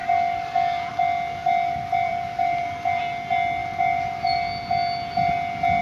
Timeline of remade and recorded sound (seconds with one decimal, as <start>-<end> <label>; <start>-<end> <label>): 0.0-1.4 recorded; 1.4-3.0 remade; 3.0-3.6 recorded; 3.6-4.2 remade; 4.2-5.8 recorded